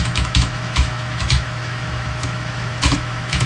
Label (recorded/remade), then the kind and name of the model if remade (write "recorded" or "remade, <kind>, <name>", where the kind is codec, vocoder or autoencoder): remade, autoencoder, DAC-VAE